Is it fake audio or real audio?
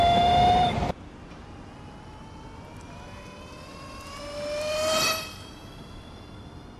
real